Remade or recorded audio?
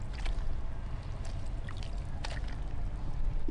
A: recorded